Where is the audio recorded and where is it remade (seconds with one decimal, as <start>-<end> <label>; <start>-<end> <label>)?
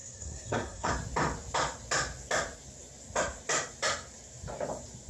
0.0-0.9 remade; 0.9-5.1 recorded